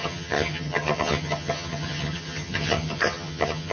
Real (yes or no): no